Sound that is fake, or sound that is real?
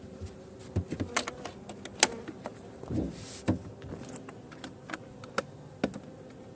real